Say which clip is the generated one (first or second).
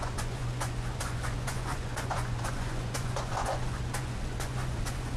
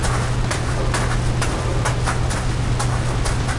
first